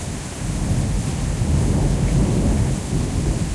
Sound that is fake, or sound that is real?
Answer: real